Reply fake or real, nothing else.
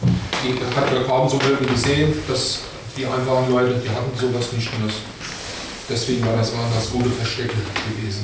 real